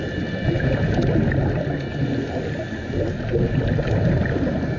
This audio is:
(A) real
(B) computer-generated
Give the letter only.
A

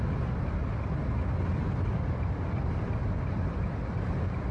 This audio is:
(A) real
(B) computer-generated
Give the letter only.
A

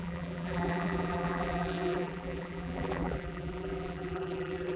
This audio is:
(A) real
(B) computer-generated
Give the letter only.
B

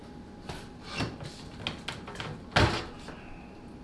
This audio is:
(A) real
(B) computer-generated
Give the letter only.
A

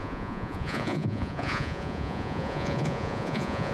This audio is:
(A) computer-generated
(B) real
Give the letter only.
A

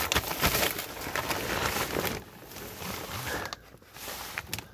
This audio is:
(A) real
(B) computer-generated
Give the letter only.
A